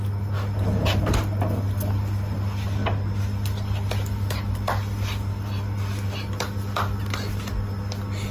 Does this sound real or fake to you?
real